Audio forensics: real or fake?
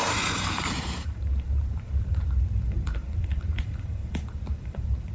fake